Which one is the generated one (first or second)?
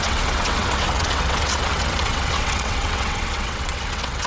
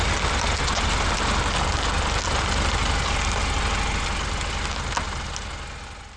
first